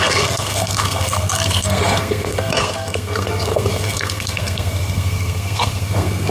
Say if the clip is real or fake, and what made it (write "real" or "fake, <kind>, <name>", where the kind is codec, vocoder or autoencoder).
fake, codec, SNAC